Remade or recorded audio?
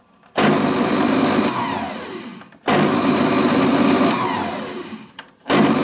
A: recorded